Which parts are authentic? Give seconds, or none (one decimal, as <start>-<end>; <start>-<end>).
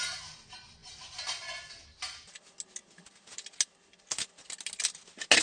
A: 0.0-5.4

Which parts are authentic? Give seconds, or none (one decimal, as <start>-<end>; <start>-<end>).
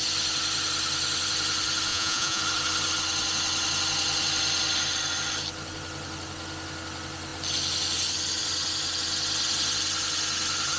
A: 0.0-1.9; 2.4-10.8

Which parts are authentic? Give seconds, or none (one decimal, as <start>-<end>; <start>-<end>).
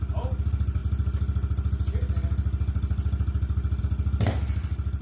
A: 0.0-5.0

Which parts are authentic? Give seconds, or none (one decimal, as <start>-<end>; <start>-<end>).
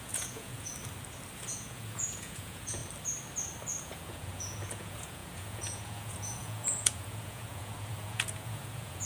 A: 0.7-1.4; 2.8-3.8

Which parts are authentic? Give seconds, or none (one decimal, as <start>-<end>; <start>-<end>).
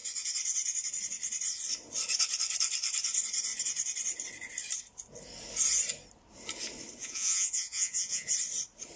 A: 0.0-7.0; 8.3-9.0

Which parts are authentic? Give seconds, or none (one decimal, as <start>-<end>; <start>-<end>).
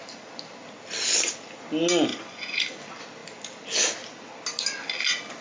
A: 0.0-2.1; 2.6-5.4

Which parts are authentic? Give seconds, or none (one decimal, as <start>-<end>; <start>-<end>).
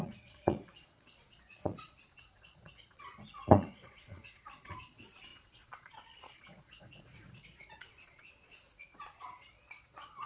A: none